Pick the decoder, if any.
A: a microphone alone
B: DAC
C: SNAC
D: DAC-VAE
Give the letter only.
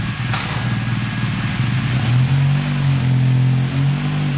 A